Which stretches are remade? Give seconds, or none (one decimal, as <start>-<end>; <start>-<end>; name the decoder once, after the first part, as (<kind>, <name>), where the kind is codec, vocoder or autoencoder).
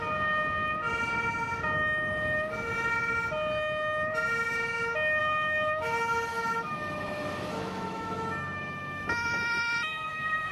5.2-10.5 (autoencoder, DAC-VAE)